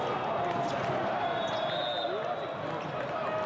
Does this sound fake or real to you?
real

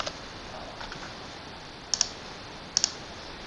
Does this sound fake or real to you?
real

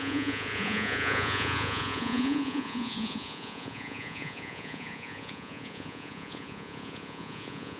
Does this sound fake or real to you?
fake